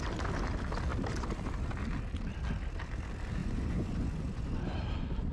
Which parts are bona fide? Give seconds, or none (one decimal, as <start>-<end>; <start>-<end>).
0.0-3.4; 4.8-5.3